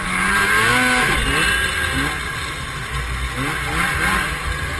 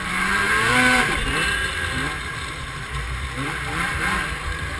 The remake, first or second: second